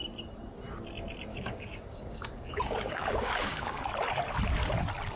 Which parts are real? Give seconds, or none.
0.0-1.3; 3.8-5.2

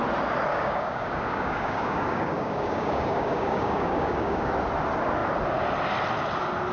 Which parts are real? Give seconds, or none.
0.0-0.5; 4.5-6.7

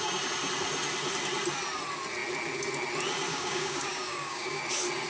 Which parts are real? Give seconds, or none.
0.0-3.3; 4.6-5.1

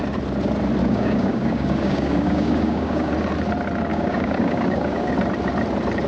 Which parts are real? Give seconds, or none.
0.0-0.8; 3.1-3.9; 5.1-6.1